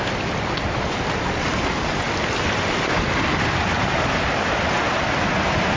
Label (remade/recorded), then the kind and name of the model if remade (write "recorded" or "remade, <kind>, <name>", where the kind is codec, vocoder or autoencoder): remade, vocoder, BigVGAN v2